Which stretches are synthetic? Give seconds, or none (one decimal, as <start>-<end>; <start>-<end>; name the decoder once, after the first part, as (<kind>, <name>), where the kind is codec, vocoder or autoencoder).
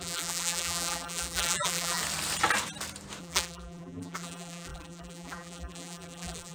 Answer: 0.0-2.0 (vocoder, BigVGAN v2); 3.2-6.5